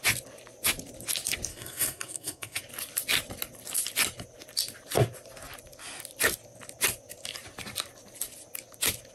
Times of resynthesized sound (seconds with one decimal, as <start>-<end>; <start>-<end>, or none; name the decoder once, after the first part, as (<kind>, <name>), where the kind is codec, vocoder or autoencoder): 1.5-2.6 (codec, SNAC)